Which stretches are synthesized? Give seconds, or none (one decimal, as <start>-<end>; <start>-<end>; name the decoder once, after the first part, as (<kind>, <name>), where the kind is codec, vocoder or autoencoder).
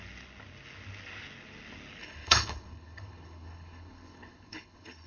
2.0-5.1 (codec, HILCodec)